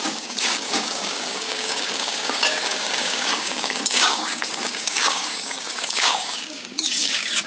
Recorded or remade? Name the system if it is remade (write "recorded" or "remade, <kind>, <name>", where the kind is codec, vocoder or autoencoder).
remade, codec, DAC